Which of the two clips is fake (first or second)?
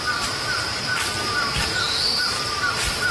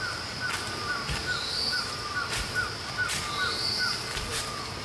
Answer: first